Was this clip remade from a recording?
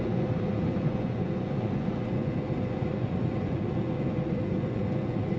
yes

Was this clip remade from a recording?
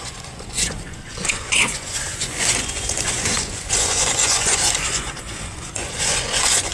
yes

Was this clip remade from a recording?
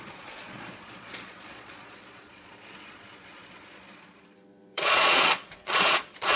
yes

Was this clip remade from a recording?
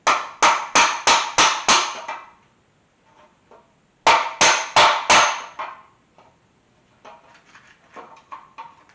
no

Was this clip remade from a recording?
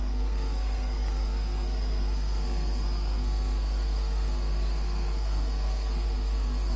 yes